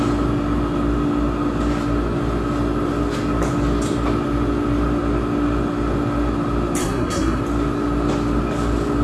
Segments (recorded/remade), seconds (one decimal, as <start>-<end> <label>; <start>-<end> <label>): 0.0-6.8 recorded; 6.8-7.4 remade; 7.4-9.0 recorded